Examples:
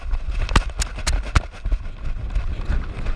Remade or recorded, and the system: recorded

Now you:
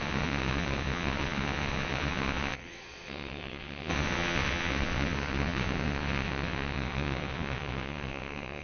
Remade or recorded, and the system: remade, vocoder, WaveNeXt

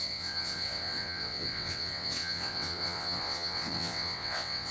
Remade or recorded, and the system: remade, vocoder, WaveNeXt